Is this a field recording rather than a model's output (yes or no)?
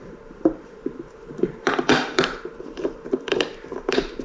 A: no